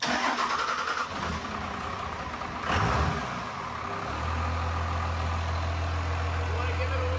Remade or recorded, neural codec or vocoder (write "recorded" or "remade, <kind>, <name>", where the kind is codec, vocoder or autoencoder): recorded